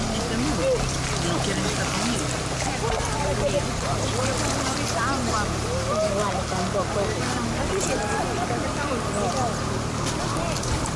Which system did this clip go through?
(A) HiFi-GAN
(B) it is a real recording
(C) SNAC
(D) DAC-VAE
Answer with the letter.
B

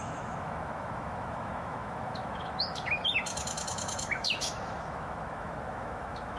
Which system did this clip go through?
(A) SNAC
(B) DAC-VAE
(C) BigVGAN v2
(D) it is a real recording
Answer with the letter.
B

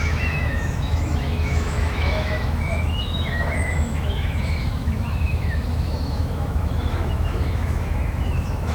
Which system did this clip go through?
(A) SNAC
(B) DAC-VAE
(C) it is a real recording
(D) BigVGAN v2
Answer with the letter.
B